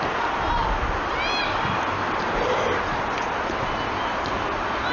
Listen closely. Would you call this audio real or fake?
real